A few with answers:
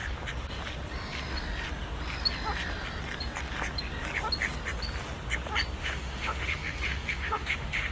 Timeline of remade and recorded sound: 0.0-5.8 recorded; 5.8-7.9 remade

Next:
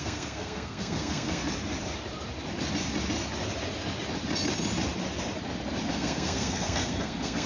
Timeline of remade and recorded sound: 0.0-1.4 remade; 1.4-5.9 recorded; 5.9-7.5 remade

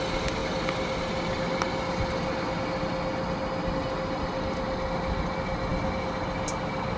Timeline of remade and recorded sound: 0.0-7.0 recorded

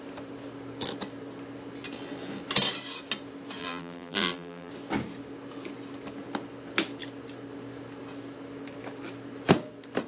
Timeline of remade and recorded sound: 0.0-3.6 recorded; 3.6-4.7 remade; 4.7-10.1 recorded

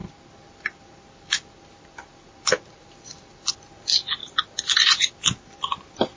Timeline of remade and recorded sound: 0.0-3.5 remade; 3.5-4.2 recorded; 4.2-5.2 remade; 5.2-6.2 recorded

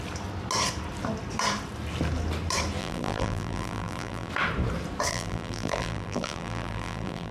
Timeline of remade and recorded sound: 0.0-2.8 recorded; 2.8-4.3 remade; 4.3-5.1 recorded; 5.1-7.3 remade

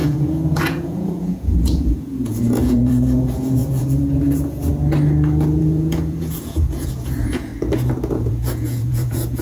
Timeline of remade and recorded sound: 0.0-4.7 remade; 4.7-5.6 recorded; 5.6-7.5 remade; 7.5-8.1 recorded; 8.1-9.4 remade

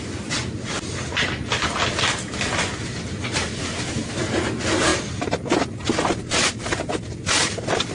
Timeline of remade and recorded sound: 0.0-7.9 recorded